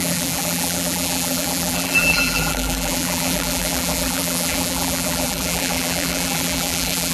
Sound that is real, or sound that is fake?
fake